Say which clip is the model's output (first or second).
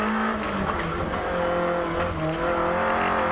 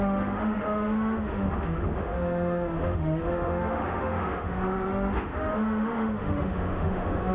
second